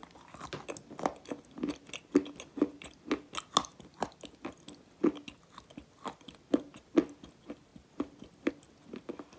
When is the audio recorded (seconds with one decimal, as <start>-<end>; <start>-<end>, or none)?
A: 0.0-9.4